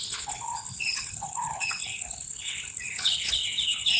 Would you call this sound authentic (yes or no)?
no